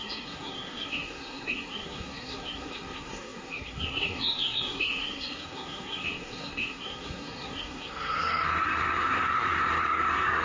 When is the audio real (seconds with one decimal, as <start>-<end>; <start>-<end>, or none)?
none